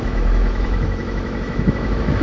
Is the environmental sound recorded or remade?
remade